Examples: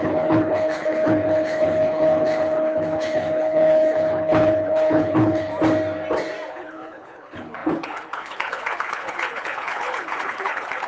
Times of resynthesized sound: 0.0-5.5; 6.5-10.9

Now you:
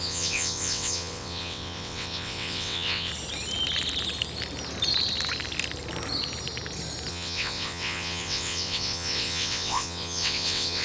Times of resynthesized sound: 0.0-3.1; 7.1-10.8

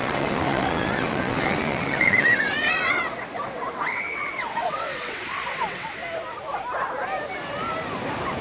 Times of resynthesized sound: 0.0-6.0

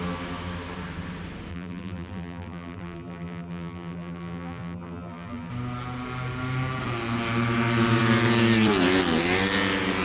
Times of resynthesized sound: 1.5-5.5

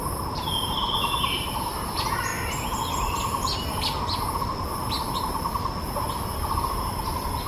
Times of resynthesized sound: 1.6-2.3; 2.9-7.5